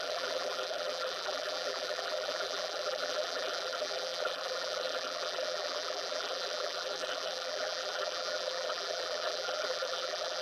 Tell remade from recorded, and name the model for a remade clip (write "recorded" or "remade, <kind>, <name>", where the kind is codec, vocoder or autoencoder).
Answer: remade, vocoder, BigVGAN v2